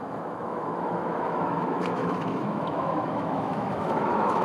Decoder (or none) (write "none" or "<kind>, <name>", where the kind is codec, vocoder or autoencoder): autoencoder, DAC-VAE